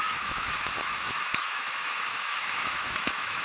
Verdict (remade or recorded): remade